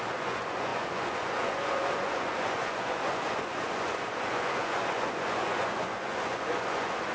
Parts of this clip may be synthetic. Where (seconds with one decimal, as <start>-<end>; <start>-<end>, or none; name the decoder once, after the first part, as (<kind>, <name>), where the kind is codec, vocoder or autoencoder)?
0.0-7.1 (vocoder, Vocos)